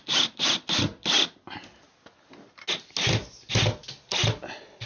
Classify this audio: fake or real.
real